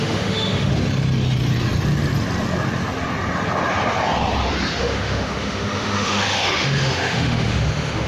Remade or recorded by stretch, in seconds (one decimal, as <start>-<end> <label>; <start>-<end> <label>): 0.0-0.7 remade; 0.7-4.8 recorded; 4.8-8.1 remade